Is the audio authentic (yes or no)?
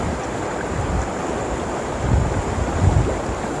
yes